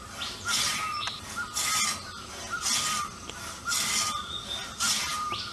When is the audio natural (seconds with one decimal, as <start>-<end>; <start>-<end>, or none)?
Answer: 0.0-5.5